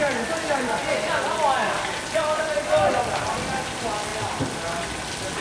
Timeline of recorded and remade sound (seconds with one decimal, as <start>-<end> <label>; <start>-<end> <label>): 0.0-4.1 recorded; 4.1-4.6 remade; 4.6-5.4 recorded